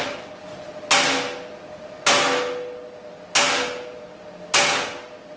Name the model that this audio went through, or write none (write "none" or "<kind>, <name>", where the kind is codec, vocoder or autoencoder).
none